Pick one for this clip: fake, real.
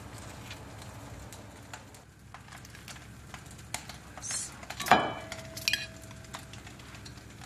real